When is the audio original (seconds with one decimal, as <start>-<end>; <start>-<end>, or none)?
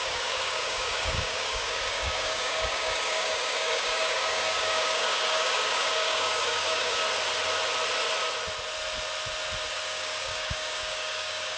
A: 7.0-9.7